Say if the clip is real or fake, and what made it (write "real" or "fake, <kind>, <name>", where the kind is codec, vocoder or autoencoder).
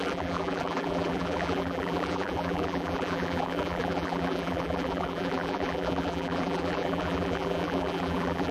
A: fake, vocoder, BigVGAN v2